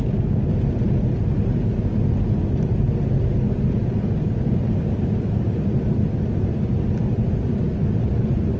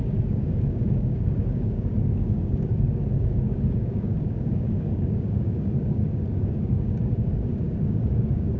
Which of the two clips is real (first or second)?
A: first